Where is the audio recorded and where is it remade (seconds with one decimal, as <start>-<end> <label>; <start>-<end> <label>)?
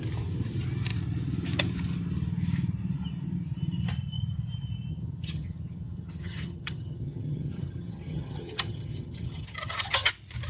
0.0-4.9 recorded; 4.9-10.1 remade; 10.1-10.5 recorded